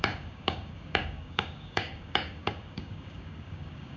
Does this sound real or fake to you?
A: fake